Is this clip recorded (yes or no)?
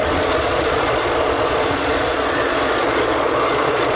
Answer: no